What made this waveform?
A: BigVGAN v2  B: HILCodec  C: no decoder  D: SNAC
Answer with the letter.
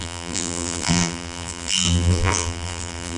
A